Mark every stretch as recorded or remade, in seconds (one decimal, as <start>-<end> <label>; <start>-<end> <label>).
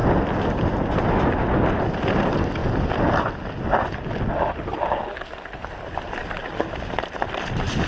0.0-7.9 recorded